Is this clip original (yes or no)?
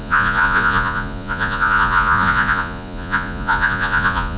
no